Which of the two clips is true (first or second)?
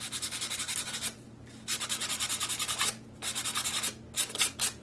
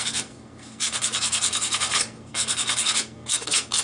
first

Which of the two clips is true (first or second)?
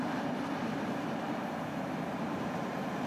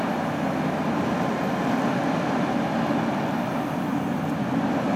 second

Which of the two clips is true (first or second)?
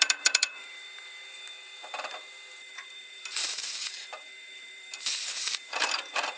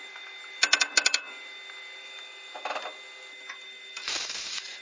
second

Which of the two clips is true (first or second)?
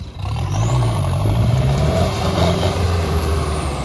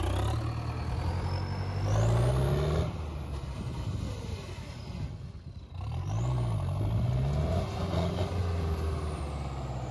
second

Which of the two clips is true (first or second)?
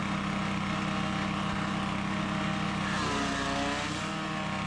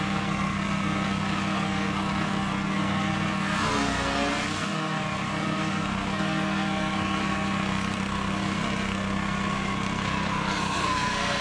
first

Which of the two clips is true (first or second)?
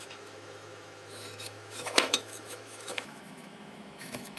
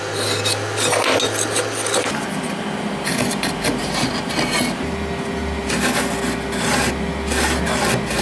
second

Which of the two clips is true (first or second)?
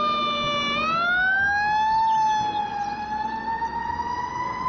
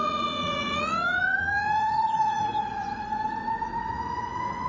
first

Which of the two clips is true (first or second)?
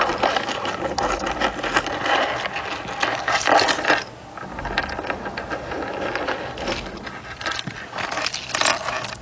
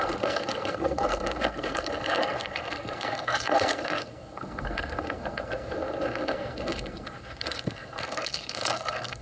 first